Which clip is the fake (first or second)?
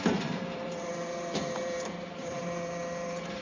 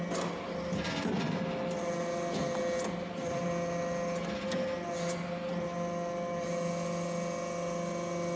first